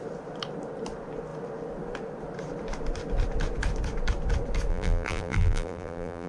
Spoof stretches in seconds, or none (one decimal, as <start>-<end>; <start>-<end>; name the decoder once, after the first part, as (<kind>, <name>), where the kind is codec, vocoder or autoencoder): 4.7-6.3 (vocoder, BigVGAN v2)